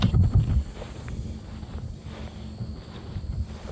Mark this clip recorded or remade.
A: recorded